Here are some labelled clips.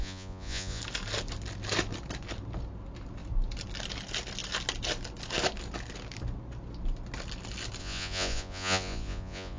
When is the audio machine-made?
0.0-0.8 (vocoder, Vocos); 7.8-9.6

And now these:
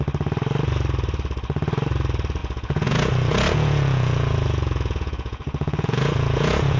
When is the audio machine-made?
2.4-6.8 (vocoder, Vocos)

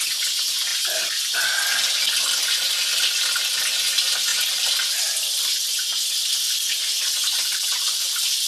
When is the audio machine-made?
none